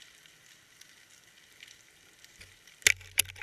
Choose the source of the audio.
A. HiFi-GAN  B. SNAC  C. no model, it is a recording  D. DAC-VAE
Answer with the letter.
C